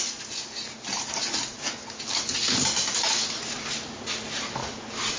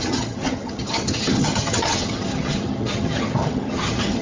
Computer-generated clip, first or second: second